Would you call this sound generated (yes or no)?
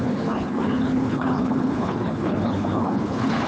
yes